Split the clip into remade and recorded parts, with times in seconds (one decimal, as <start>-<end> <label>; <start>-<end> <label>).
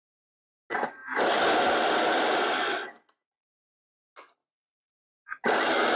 0.0-4.4 recorded; 4.4-5.5 remade; 5.5-6.0 recorded